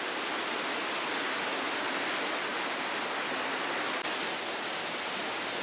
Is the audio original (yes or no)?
yes